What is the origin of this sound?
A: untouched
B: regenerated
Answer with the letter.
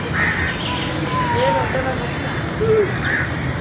A